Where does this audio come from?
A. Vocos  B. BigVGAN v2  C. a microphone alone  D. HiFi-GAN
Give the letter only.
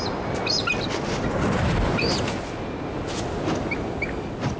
C